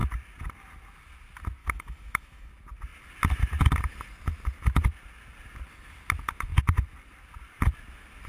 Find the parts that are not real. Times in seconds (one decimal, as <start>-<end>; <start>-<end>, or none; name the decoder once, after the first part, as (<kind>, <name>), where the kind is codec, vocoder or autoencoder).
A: 1.6-2.5 (autoencoder, DAC-VAE)